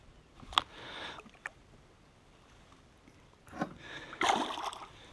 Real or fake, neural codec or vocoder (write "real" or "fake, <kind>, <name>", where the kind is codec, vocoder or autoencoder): real